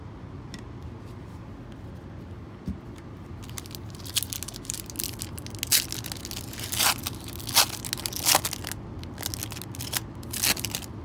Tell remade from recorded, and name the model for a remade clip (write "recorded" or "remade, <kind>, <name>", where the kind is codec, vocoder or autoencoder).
recorded